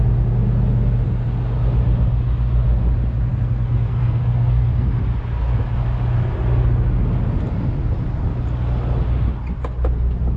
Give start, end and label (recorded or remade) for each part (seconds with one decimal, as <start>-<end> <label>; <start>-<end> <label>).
0.0-3.3 recorded; 3.3-5.0 remade; 5.0-10.4 recorded

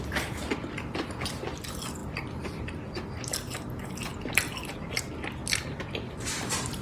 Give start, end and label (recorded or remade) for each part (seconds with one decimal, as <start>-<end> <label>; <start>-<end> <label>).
0.0-6.8 recorded

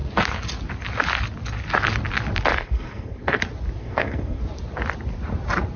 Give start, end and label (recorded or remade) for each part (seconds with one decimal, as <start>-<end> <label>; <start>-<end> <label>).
0.0-2.5 recorded; 2.5-3.4 remade; 3.4-3.8 recorded; 3.8-4.4 remade; 4.4-5.8 recorded